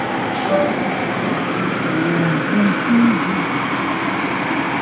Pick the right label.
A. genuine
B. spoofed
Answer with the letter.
A